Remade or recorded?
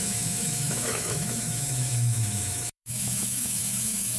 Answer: remade